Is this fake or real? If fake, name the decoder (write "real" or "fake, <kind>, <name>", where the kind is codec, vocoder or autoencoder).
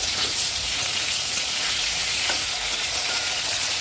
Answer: fake, vocoder, Vocos